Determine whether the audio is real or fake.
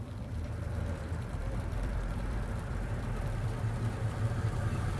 fake